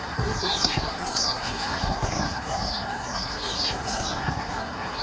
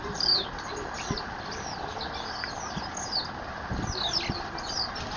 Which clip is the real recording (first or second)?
second